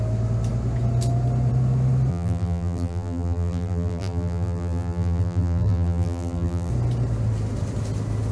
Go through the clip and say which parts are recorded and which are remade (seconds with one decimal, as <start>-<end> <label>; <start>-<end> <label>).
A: 0.0-2.1 recorded; 2.1-6.7 remade; 6.7-8.3 recorded